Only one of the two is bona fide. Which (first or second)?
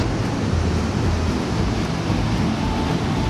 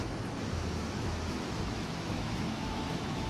first